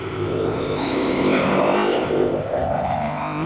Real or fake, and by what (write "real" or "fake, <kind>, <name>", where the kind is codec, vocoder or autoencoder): fake, codec, ZipCodec